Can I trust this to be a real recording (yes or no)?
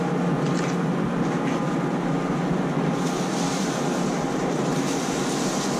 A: yes